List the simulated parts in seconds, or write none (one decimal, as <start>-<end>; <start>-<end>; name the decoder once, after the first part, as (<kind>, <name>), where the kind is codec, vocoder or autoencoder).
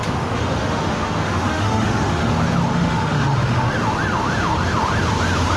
0.0-2.3 (autoencoder, DAC-VAE); 2.7-3.7